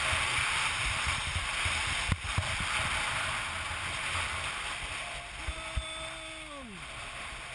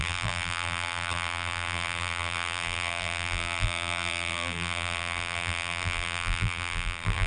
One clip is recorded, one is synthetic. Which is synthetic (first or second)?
second